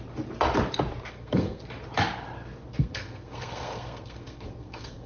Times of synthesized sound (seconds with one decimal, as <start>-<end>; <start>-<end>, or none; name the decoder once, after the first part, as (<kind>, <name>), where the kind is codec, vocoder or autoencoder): 1.1-1.6 (codec, SNAC); 2.7-5.1